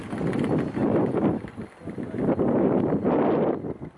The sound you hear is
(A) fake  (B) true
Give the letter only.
B